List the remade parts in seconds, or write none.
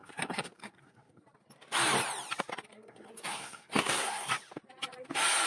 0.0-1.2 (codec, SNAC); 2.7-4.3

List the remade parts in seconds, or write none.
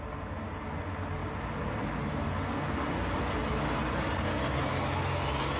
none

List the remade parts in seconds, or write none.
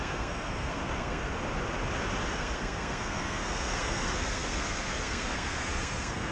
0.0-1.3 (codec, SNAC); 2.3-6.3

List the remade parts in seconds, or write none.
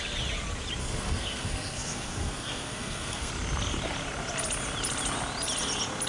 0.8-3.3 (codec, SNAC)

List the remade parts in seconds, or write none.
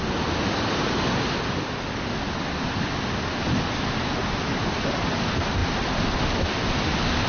none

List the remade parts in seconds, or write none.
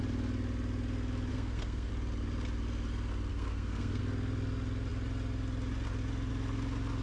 1.3-1.9 (codec, SNAC); 3.3-4.0